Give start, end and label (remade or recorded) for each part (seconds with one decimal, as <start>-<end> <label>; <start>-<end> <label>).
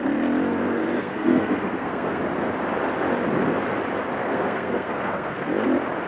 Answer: 0.0-0.5 recorded; 0.5-2.2 remade; 2.2-4.2 recorded; 4.2-5.4 remade; 5.4-6.1 recorded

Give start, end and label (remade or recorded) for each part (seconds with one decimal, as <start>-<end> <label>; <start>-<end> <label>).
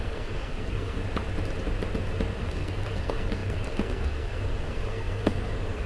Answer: 0.0-1.0 remade; 1.0-2.4 recorded; 2.4-5.9 remade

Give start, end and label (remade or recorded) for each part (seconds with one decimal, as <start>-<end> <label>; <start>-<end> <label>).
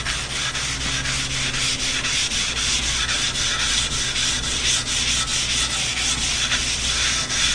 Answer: 0.0-7.5 recorded